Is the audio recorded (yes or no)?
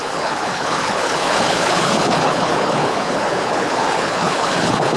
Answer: no